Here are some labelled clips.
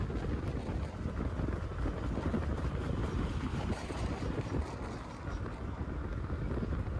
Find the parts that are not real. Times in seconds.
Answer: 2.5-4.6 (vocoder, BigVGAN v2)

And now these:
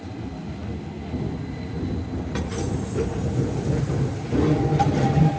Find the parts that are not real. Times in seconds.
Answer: none

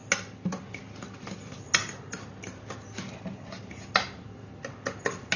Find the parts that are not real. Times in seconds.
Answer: none